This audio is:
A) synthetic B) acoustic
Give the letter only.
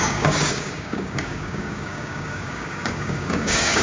A